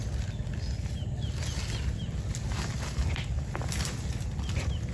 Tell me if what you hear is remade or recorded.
recorded